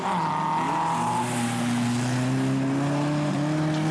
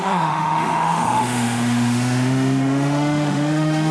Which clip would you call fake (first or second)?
second